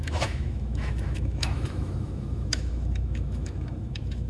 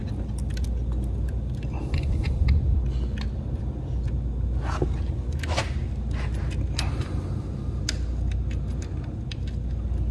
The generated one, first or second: first